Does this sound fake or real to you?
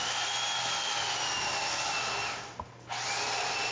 real